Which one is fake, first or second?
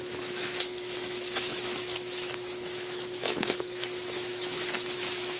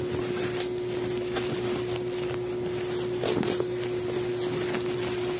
first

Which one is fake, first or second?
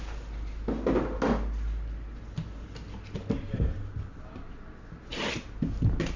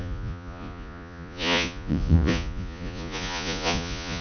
second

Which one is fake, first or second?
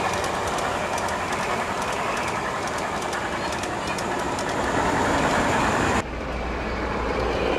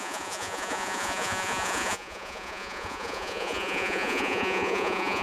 second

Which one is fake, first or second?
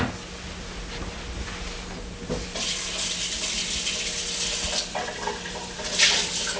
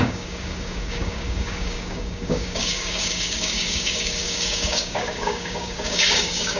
second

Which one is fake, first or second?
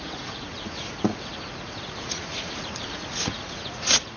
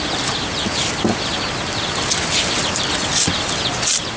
first